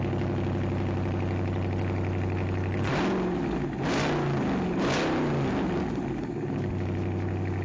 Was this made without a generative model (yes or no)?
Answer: yes